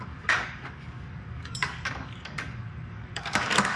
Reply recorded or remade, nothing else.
remade